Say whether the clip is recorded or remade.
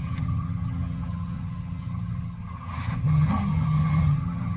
remade